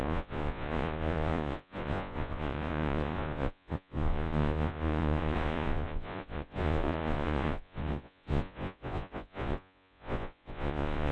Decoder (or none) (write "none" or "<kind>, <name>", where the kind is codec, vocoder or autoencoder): vocoder, Vocos